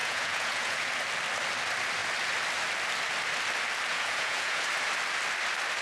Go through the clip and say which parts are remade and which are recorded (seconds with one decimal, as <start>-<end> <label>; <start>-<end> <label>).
0.0-0.9 remade; 0.9-3.9 recorded; 3.9-4.7 remade; 4.7-5.8 recorded